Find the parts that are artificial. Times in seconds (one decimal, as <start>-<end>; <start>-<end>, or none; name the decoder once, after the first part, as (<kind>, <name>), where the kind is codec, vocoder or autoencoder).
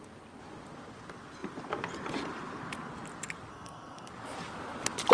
3.5-4.1 (codec, SNAC)